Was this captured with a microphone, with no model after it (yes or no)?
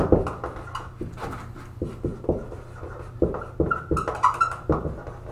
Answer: yes